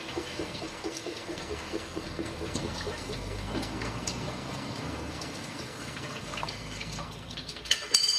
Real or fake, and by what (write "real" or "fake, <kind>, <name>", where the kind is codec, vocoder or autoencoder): fake, codec, SNAC